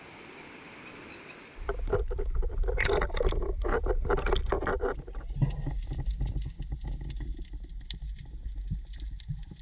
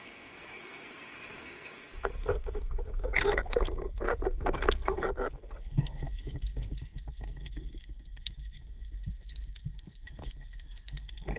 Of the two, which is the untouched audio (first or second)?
first